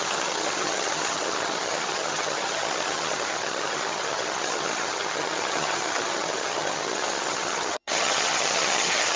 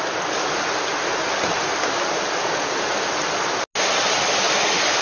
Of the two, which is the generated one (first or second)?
first